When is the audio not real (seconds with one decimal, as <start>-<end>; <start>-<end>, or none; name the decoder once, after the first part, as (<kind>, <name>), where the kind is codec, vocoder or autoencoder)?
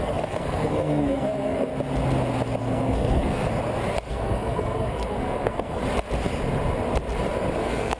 0.0-1.7 (codec, SNAC); 2.6-3.5; 4.1-5.8; 7.6-8.0